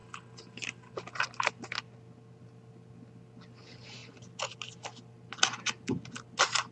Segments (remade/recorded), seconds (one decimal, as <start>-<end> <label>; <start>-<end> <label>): 0.0-6.7 recorded